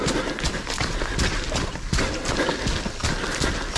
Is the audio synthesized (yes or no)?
no